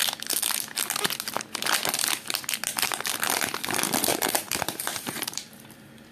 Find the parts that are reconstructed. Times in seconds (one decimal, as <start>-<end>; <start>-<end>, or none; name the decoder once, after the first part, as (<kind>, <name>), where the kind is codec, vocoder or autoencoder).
4.1-5.6 (vocoder, BigVGAN v2)